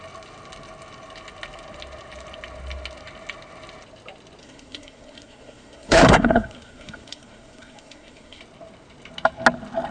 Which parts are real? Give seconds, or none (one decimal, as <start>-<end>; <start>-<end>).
0.0-4.4; 8.4-9.9